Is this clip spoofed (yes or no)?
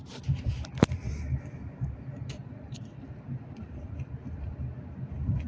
no